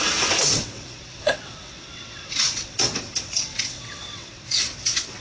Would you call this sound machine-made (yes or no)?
yes